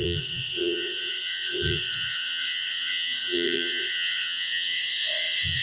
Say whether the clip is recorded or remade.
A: remade